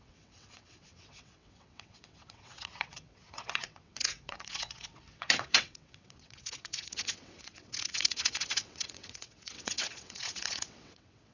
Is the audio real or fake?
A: fake